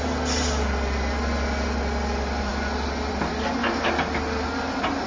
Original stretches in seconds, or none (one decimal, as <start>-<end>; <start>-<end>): 0.0-5.1

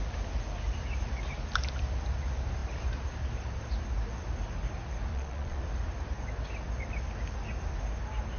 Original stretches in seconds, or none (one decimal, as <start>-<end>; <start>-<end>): 0.0-5.1; 5.6-8.4

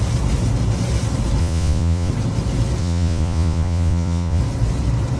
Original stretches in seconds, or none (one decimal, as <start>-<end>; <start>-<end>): 0.0-1.4; 2.1-2.8; 4.4-5.2